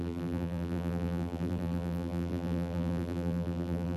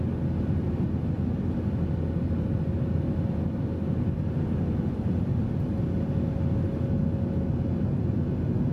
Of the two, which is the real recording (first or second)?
second